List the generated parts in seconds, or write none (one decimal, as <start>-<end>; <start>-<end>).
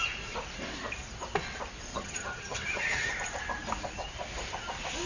1.9-3.1